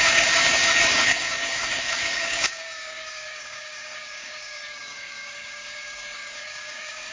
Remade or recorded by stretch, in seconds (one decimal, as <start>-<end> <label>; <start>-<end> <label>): 0.0-7.1 remade